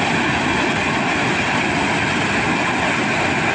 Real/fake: real